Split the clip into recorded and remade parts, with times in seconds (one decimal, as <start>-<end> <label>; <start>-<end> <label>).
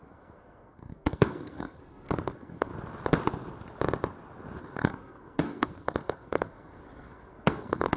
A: 0.0-2.7 remade; 2.7-4.6 recorded; 4.6-8.0 remade